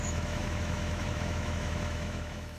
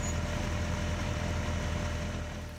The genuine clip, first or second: second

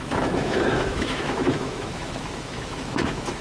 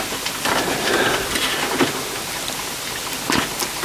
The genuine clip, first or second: second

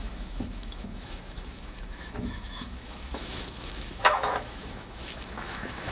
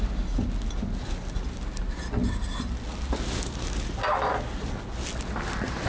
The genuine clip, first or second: second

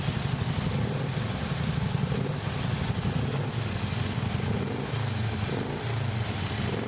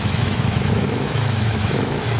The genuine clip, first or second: first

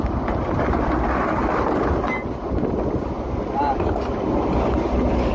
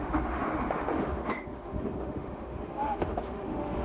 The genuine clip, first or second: first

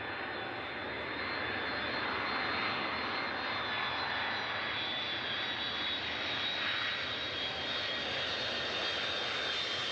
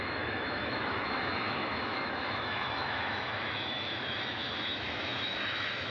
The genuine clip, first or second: first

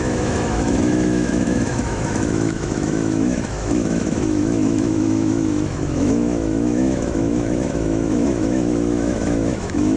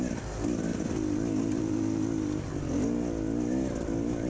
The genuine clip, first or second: second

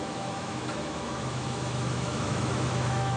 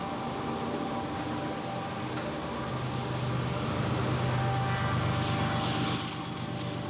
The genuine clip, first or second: second